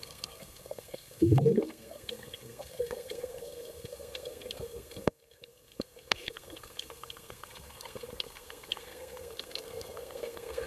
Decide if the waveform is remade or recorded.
remade